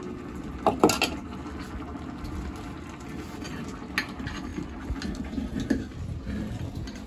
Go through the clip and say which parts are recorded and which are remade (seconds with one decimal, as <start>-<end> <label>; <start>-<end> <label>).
0.0-7.1 recorded